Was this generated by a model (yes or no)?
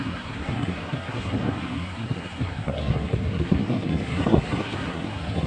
yes